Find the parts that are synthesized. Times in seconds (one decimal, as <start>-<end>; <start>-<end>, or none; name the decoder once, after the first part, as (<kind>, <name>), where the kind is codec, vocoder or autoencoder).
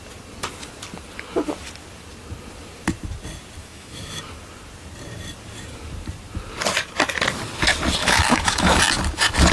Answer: 3.6-4.2 (autoencoder, DAC-VAE); 8.0-8.8